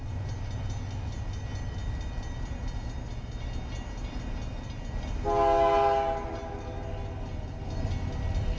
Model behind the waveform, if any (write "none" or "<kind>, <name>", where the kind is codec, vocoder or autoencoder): none